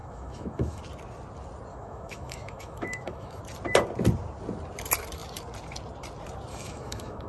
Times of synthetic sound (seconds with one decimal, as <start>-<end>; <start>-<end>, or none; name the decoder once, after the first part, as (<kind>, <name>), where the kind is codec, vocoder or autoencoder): 0.0-0.8 (autoencoder, DAC-VAE); 1.7-3.4; 6.5-7.3

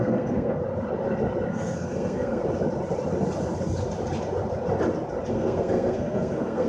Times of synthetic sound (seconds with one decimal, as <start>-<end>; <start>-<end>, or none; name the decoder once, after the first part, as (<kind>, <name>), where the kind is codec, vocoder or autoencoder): 0.0-0.6 (codec, SNAC); 1.5-2.4; 5.3-6.7

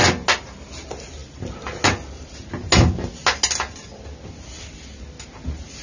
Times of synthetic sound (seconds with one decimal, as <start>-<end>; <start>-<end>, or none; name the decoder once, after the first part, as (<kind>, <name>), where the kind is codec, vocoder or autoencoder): none

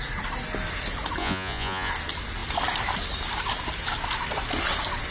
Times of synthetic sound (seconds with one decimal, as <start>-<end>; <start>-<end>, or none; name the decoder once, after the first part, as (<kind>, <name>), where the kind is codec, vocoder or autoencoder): 1.2-1.9 (vocoder, Vocos)